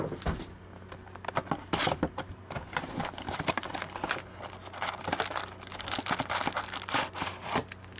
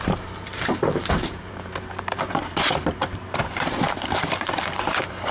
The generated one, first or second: second